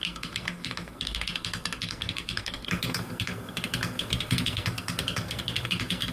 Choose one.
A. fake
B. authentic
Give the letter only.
A